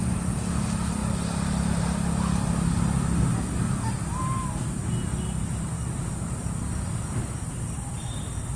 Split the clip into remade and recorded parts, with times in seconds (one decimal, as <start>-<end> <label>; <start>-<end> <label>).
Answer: 0.0-8.6 recorded